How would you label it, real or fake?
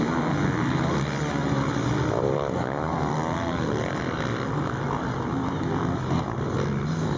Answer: real